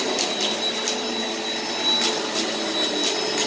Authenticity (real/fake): real